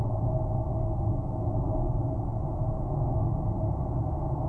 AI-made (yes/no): no